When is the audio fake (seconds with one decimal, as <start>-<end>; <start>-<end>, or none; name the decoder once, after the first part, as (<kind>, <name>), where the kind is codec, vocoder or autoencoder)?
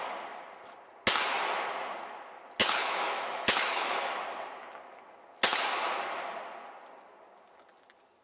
2.6-4.2 (autoencoder, DAC-VAE)